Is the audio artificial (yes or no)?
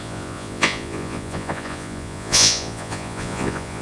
yes